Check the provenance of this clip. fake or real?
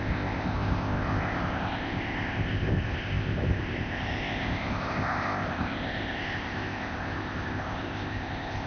fake